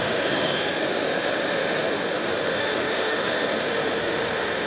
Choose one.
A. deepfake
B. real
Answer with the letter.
A